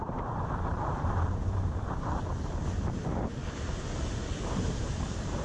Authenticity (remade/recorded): remade